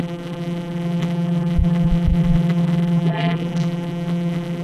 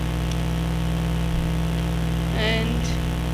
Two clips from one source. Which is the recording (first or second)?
second